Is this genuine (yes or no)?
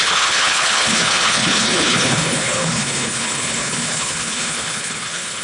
no